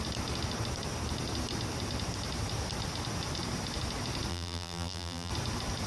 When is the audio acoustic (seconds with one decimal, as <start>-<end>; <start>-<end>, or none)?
0.0-4.3; 5.3-5.9